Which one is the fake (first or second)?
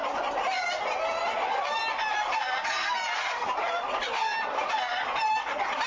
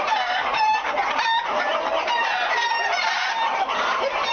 second